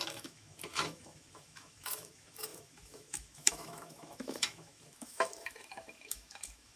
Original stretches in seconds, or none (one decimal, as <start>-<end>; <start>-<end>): none